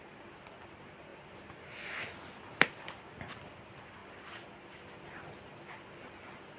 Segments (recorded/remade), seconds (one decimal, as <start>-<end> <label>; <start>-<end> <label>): 0.0-4.0 recorded; 4.0-4.5 remade; 4.5-6.6 recorded